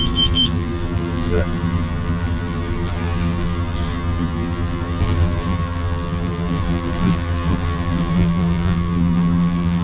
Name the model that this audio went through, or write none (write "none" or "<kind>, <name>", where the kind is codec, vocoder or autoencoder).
vocoder, BigVGAN v2